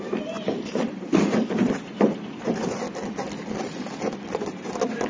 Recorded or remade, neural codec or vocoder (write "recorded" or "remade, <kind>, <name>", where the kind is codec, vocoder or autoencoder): recorded